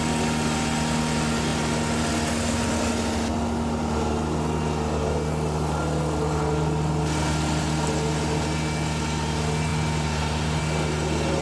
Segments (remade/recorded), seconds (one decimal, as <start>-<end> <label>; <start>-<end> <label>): 0.0-11.4 recorded